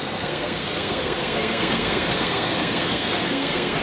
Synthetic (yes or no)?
yes